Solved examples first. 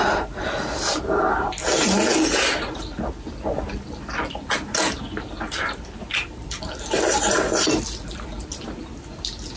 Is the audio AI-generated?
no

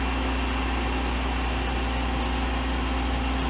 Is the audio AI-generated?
no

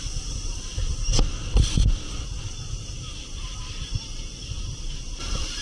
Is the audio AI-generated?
no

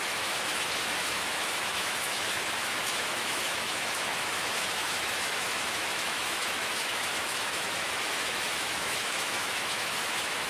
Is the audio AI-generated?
yes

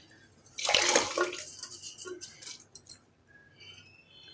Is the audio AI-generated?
no